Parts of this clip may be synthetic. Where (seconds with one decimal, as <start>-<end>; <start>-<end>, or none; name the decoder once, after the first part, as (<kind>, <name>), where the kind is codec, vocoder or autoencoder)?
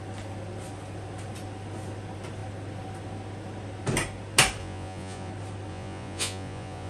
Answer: 4.6-5.3 (vocoder, Vocos); 5.7-6.9